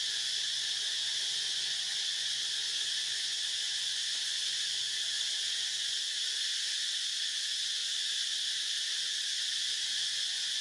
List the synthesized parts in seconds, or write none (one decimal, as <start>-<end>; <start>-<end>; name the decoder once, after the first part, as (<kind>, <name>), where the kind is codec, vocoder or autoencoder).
0.0-7.8 (vocoder, Vocos); 9.8-10.6